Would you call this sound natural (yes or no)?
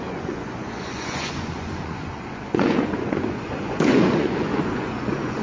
no